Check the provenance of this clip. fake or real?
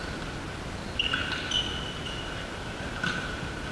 real